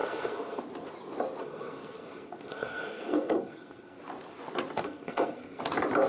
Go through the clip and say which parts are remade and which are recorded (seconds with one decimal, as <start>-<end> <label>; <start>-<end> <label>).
0.0-0.6 remade; 0.6-1.4 recorded; 1.4-4.0 remade; 4.0-4.8 recorded; 4.8-5.6 remade; 5.6-6.1 recorded